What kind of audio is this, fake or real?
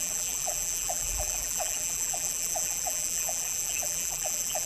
fake